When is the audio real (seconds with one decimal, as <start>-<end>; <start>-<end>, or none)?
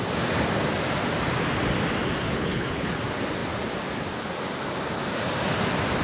0.0-2.2; 3.0-6.0